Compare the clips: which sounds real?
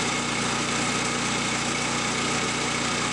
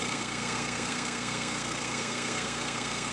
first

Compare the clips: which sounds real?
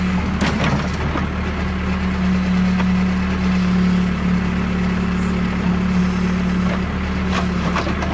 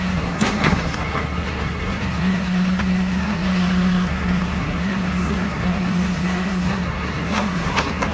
first